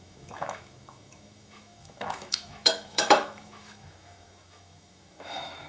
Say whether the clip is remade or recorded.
remade